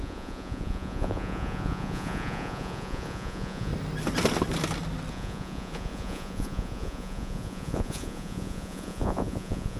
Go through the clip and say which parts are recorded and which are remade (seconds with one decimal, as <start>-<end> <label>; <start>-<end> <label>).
0.0-3.7 remade; 3.7-5.1 recorded; 5.1-9.8 remade